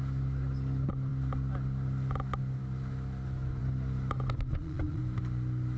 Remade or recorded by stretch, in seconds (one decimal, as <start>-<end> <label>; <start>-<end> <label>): 0.0-4.5 recorded; 4.5-5.0 remade; 5.0-5.8 recorded